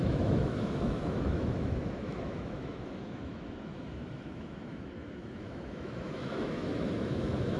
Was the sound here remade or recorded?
remade